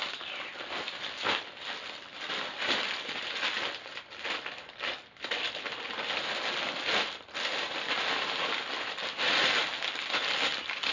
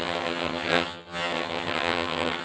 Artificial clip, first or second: second